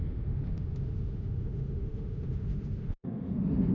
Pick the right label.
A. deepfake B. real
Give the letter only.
A